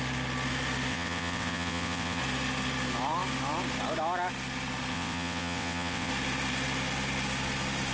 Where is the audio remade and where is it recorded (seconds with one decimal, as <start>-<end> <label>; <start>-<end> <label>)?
0.0-0.9 recorded; 0.9-2.2 remade; 2.2-4.9 recorded; 4.9-6.1 remade; 6.1-7.9 recorded